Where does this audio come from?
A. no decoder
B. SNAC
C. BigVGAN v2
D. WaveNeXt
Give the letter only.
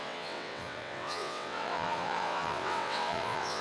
D